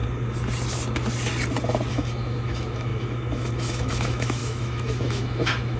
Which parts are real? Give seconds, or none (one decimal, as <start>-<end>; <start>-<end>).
0.0-1.9